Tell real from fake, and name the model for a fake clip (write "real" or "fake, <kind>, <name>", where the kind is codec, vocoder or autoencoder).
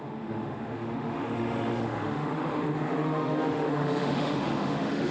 fake, autoencoder, DAC-VAE